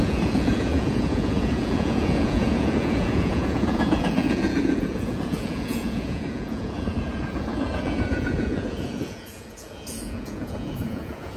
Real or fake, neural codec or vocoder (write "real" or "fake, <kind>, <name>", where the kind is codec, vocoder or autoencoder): fake, vocoder, Vocos